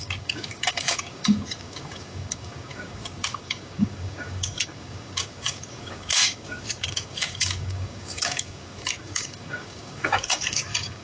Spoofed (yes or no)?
yes